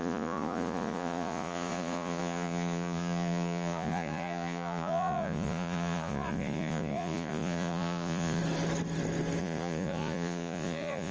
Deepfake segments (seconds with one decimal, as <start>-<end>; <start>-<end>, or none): 0.0-8.4; 9.4-11.1